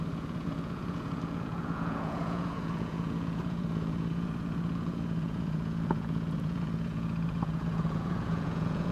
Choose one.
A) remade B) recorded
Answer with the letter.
A